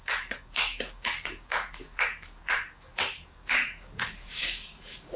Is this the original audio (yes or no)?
no